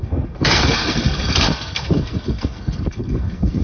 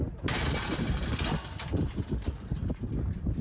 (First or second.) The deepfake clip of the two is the first